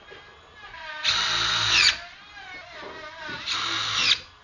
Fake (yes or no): no